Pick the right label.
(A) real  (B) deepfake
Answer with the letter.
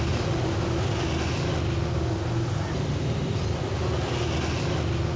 A